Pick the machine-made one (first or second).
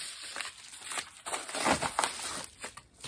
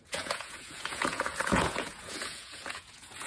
second